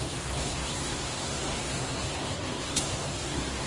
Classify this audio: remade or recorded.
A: remade